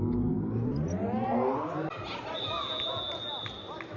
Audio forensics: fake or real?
real